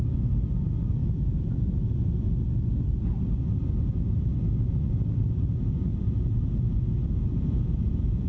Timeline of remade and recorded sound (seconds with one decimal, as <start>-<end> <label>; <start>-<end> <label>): 0.0-1.0 recorded; 1.0-1.7 remade; 1.7-5.9 recorded; 5.9-8.3 remade